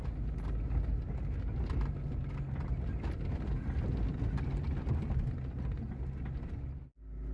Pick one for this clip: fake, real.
real